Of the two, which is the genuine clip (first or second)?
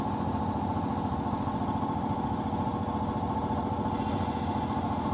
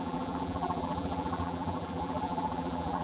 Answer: first